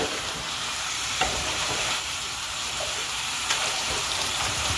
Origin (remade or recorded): remade